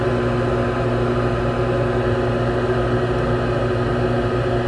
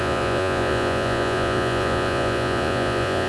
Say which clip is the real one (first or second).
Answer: first